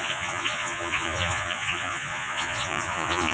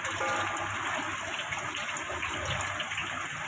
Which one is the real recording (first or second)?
second